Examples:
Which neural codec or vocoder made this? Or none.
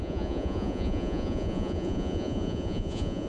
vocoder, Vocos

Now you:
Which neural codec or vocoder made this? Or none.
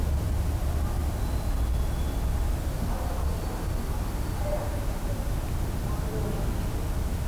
none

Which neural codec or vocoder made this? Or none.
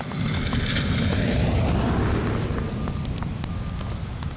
none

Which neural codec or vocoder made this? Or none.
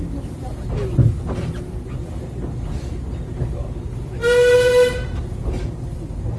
none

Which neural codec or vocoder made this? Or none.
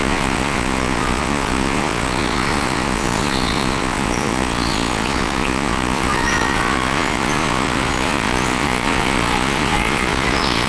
vocoder, Vocos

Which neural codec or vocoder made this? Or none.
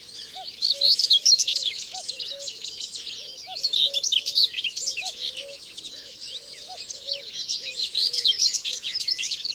autoencoder, DAC-VAE